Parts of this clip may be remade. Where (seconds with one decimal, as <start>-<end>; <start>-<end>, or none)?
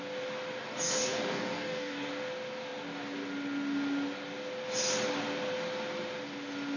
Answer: 0.6-2.1